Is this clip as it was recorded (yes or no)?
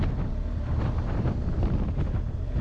yes